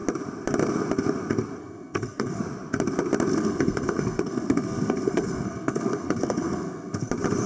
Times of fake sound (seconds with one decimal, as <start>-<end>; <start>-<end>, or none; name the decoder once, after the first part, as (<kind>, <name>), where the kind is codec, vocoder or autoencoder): 1.6-2.4 (codec, SNAC); 3.3-7.1